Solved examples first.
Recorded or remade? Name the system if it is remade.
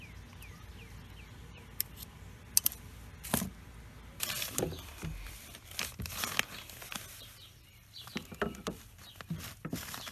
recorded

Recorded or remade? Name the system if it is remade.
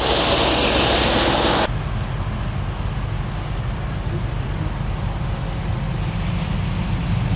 recorded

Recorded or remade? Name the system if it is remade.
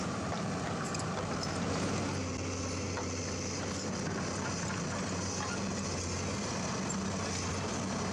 recorded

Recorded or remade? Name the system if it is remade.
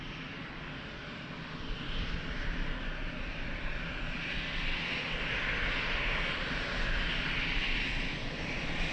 recorded